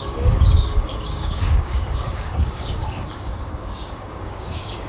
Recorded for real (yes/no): no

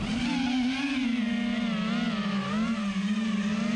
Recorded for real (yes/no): yes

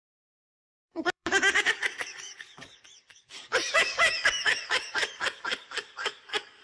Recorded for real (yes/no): no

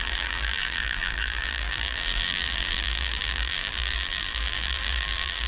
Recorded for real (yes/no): no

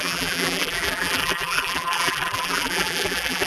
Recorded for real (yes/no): no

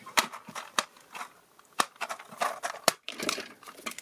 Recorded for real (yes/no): no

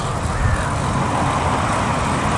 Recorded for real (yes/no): yes